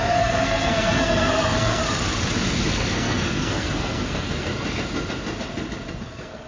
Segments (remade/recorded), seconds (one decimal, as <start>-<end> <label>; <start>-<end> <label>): 0.0-1.8 remade; 1.8-2.7 recorded; 2.7-4.5 remade; 4.5-5.9 recorded; 5.9-6.5 remade